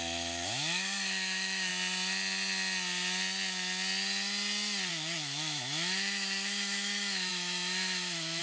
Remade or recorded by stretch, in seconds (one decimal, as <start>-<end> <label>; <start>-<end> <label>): 0.0-1.7 remade; 1.7-4.9 recorded; 4.9-8.4 remade